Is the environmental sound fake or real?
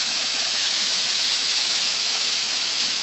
fake